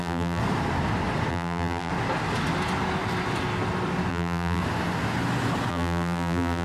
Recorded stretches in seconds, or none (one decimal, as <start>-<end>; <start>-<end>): 0.4-1.3; 1.9-4.1; 4.6-5.7